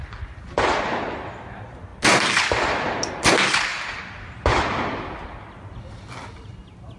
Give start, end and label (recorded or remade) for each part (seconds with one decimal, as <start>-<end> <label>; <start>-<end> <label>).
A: 0.0-7.0 recorded